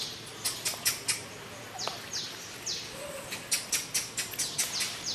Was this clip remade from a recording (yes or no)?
no